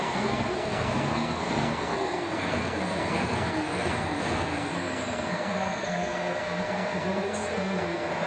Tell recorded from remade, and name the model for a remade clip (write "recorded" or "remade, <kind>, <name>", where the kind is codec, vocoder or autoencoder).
remade, codec, SNAC